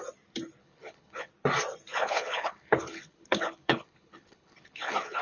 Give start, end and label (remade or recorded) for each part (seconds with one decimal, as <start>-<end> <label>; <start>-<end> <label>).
0.0-0.6 recorded; 0.6-1.3 remade; 1.3-1.9 recorded; 1.9-5.2 remade